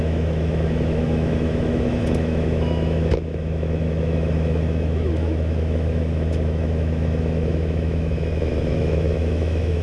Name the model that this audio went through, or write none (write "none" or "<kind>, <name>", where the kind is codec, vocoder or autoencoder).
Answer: autoencoder, DAC-VAE